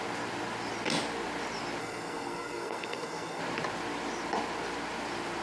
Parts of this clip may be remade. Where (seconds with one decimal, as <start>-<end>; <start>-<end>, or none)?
1.8-3.4